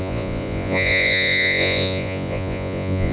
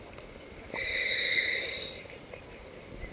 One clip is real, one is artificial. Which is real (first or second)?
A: second